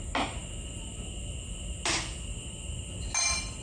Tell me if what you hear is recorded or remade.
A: recorded